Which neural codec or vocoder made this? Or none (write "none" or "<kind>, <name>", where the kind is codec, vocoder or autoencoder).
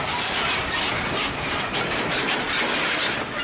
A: none